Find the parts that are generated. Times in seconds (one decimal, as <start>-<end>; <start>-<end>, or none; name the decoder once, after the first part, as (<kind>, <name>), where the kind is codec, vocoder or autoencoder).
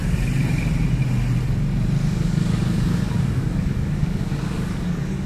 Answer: 2.0-5.3 (codec, DAC)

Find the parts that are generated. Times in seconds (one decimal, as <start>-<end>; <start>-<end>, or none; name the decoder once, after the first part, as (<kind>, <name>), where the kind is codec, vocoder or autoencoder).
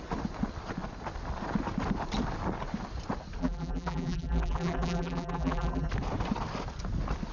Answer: 3.4-5.9 (vocoder, BigVGAN v2)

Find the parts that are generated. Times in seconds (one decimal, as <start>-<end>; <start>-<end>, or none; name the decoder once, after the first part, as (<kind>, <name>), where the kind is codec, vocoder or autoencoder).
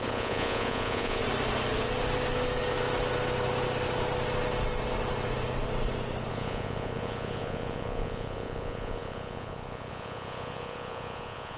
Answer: 0.0-1.2 (vocoder, Vocos); 6.3-11.6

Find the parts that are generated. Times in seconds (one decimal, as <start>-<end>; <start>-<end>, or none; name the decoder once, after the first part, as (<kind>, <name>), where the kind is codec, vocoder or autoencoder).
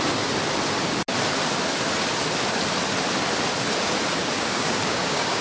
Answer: 4.4-5.4 (codec, DAC)